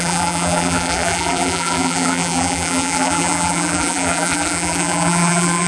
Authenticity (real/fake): fake